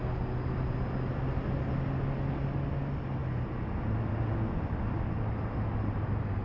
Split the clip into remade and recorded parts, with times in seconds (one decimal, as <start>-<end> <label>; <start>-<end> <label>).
0.0-6.4 recorded